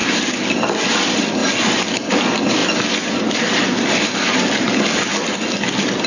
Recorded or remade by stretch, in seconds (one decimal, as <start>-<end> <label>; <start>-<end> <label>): 0.0-6.1 recorded